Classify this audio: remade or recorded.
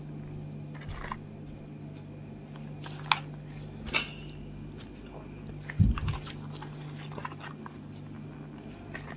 recorded